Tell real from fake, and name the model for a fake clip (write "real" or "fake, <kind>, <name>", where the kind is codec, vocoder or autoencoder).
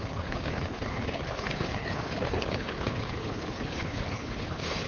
fake, codec, HILCodec